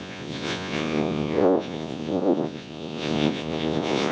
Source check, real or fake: fake